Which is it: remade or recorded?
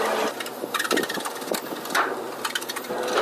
recorded